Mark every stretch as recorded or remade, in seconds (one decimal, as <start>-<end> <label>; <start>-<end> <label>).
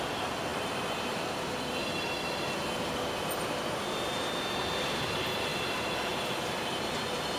0.0-5.5 recorded; 5.5-6.9 remade; 6.9-7.4 recorded